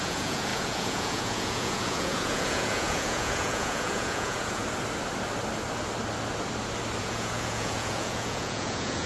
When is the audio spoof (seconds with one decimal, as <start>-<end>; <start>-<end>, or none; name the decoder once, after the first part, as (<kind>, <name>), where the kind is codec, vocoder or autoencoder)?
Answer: 0.0-4.6 (vocoder, Vocos); 7.0-9.1